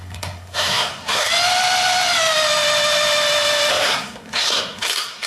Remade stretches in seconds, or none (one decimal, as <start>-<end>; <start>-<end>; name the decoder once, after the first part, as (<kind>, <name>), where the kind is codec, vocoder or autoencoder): 0.0-1.3 (codec, SNAC); 3.7-5.3